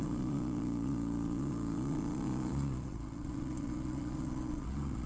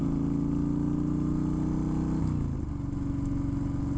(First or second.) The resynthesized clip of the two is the first